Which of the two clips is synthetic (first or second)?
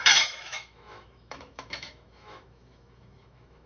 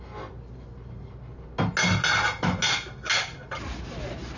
first